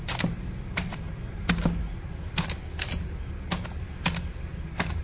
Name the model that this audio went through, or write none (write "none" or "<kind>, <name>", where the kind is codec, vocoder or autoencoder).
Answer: none